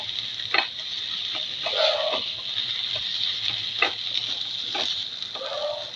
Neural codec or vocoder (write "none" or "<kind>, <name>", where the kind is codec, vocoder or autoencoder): none